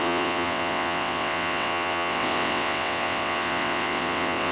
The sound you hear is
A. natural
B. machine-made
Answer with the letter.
B